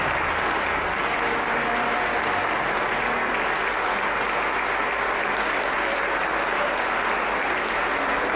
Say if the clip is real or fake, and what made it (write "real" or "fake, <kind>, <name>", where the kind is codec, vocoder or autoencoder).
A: real